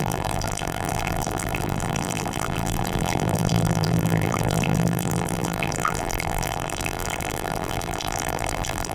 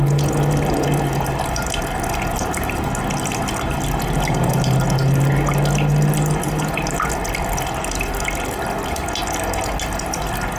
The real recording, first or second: second